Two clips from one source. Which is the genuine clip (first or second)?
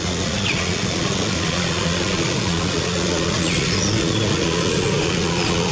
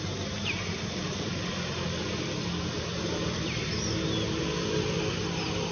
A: second